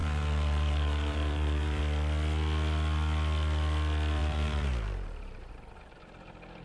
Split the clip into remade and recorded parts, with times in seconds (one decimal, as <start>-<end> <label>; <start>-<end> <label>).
0.0-1.8 remade; 1.8-4.2 recorded; 4.2-5.5 remade; 5.5-6.6 recorded